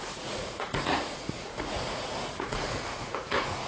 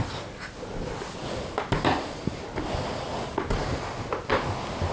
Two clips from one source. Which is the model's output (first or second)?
first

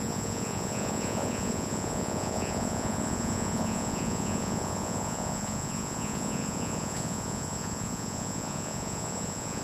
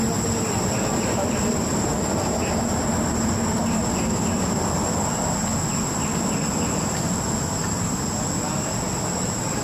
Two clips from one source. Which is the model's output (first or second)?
first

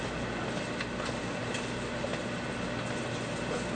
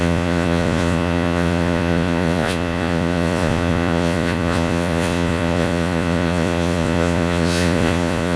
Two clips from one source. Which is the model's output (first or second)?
second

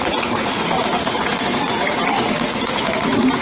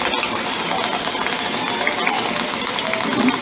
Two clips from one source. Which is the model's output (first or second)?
first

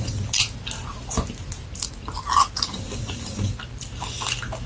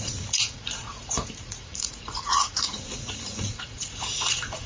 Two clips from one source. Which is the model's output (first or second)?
second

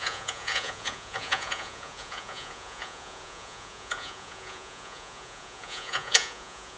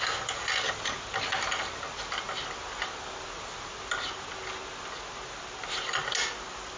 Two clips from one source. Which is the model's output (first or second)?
first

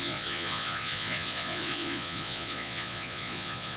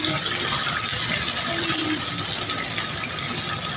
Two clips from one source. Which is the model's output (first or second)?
first